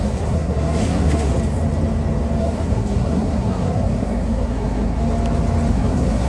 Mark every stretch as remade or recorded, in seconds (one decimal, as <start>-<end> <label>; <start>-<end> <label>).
0.0-1.3 remade; 1.3-2.4 recorded; 2.4-5.0 remade; 5.0-5.7 recorded; 5.7-6.3 remade